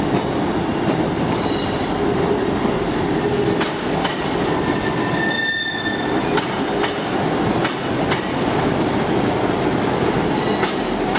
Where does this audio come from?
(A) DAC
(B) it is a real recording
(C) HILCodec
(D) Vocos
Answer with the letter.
B